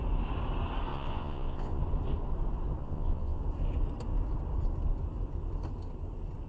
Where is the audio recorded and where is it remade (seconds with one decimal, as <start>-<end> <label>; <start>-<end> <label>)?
0.0-0.9 recorded; 0.9-1.8 remade; 1.8-2.8 recorded; 2.8-3.4 remade; 3.4-6.5 recorded